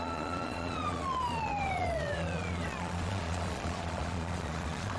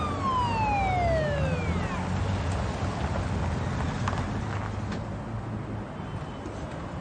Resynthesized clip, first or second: first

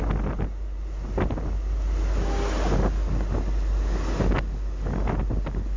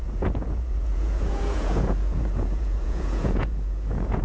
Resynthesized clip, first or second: second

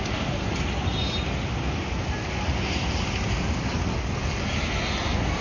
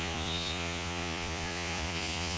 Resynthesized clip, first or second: second